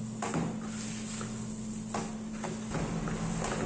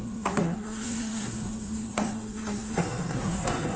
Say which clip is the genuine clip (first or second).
first